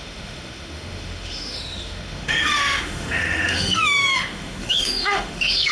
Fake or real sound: fake